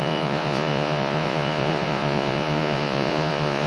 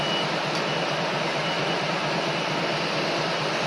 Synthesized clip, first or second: first